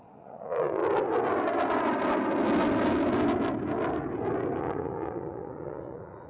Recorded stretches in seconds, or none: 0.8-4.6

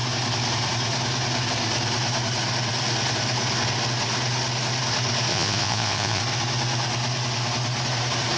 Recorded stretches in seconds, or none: 0.0-5.3; 6.2-8.4

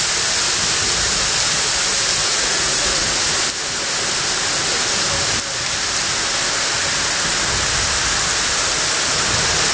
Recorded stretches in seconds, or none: 0.0-2.2; 3.3-9.7

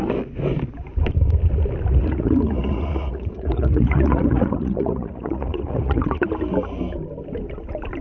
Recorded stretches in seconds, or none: 0.0-2.0; 6.3-8.0